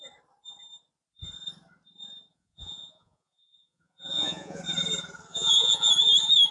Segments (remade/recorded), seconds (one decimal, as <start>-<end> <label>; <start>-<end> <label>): 0.0-2.3 recorded; 2.3-4.6 remade; 4.6-5.3 recorded; 5.3-5.9 remade; 5.9-6.5 recorded